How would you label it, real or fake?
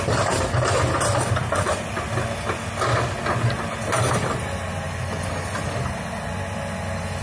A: real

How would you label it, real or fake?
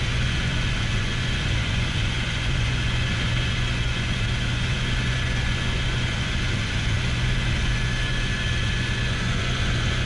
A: fake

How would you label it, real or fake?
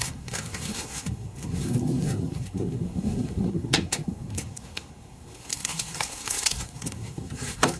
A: fake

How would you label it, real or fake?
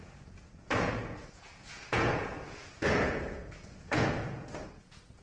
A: fake